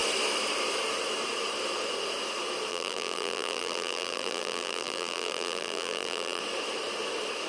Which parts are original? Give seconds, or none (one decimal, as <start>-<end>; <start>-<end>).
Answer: 0.0-2.7; 6.4-7.5